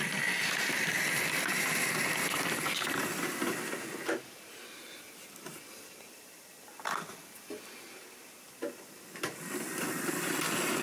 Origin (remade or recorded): recorded